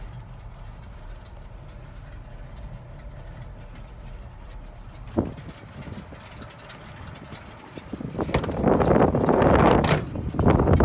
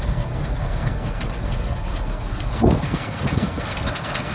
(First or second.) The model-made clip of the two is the second